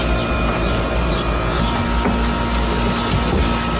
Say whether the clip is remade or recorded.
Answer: recorded